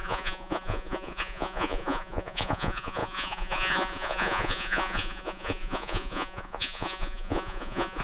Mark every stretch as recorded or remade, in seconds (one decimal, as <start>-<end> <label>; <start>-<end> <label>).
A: 0.0-8.0 remade

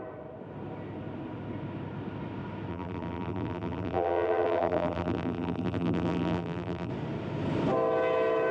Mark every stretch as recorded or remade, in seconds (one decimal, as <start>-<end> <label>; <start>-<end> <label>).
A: 0.0-2.7 recorded; 2.7-6.9 remade; 6.9-8.5 recorded

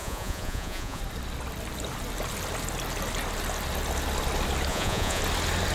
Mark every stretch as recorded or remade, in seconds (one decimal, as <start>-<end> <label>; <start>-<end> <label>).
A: 0.0-1.0 remade; 1.0-4.7 recorded; 4.7-5.2 remade; 5.2-5.7 recorded

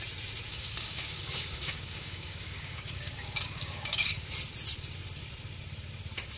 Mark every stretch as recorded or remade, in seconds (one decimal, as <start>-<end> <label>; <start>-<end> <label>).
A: 0.0-0.5 recorded; 0.5-4.3 remade; 4.3-6.4 recorded

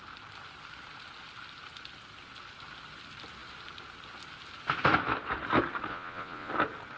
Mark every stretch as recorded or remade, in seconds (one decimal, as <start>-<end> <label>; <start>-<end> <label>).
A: 0.0-5.9 recorded; 5.9-6.5 remade; 6.5-7.0 recorded